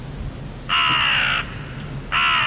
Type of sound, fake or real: real